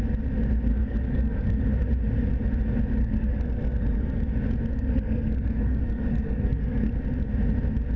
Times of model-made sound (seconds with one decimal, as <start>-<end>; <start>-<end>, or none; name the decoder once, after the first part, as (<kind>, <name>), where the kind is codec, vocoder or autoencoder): 0.7-1.6 (codec, SNAC); 3.0-4.2; 4.7-6.9